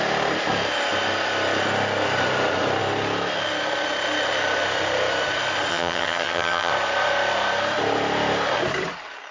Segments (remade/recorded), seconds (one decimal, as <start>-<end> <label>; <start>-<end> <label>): 0.0-5.7 recorded; 5.7-6.7 remade; 6.7-9.3 recorded